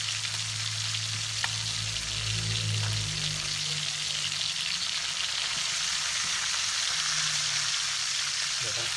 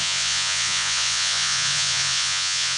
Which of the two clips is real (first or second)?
first